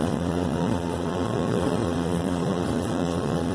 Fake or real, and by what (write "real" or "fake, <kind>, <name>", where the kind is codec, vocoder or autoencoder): fake, vocoder, Vocos